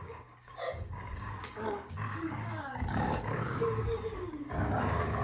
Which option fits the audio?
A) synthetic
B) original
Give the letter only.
A